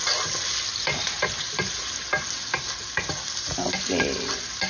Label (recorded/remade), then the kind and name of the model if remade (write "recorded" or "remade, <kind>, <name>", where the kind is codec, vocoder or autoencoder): recorded